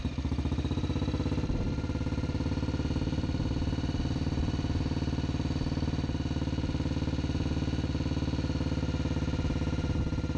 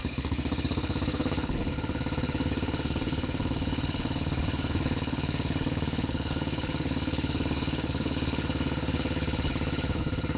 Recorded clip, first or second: first